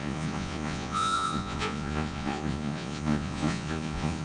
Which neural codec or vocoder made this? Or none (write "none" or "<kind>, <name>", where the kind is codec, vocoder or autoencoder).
vocoder, Vocos